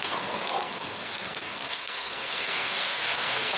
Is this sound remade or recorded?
remade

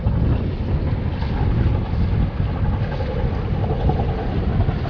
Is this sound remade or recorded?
recorded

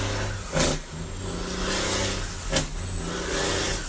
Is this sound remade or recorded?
recorded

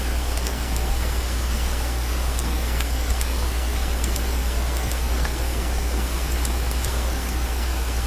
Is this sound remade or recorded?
remade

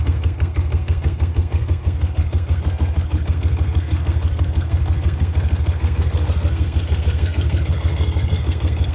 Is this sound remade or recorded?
remade